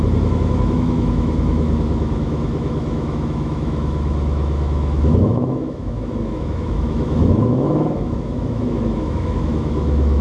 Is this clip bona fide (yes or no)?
no